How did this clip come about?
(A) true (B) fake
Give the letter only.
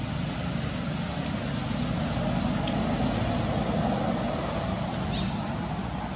A